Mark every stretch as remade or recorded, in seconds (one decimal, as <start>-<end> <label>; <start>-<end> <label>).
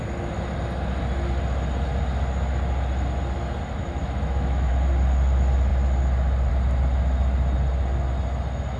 0.0-3.9 recorded; 3.9-4.7 remade; 4.7-8.8 recorded